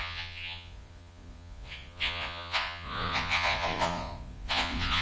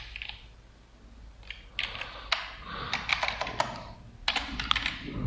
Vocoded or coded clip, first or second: first